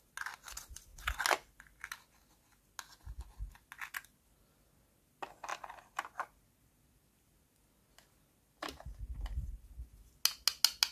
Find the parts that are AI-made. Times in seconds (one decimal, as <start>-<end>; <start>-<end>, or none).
none